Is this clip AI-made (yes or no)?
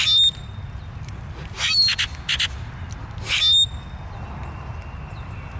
no